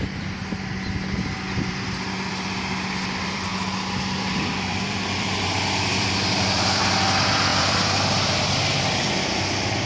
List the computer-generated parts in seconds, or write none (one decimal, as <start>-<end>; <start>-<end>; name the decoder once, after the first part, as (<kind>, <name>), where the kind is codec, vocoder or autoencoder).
0.0-0.4 (vocoder, BigVGAN v2); 1.7-9.9